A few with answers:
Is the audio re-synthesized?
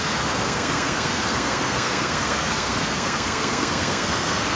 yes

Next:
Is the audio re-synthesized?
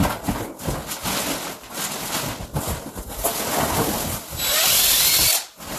no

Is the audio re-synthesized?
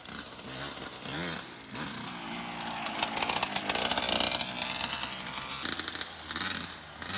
no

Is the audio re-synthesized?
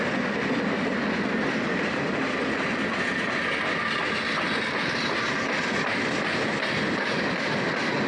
no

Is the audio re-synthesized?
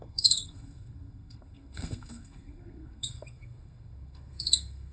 yes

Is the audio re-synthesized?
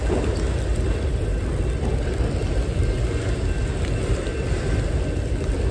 no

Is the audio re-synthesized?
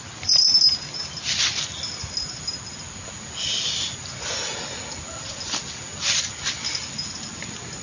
no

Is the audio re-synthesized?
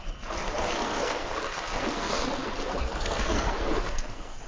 yes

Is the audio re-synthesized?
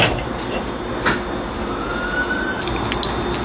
no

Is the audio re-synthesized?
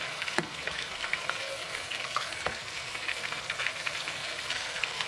yes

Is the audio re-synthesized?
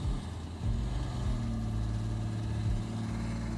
no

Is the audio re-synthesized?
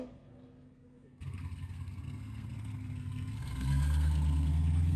yes